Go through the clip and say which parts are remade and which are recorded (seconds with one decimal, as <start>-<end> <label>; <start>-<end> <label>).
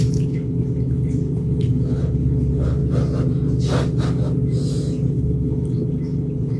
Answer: 0.0-2.8 remade; 2.8-5.1 recorded; 5.1-6.6 remade